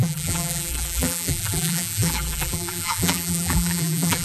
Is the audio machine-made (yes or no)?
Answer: yes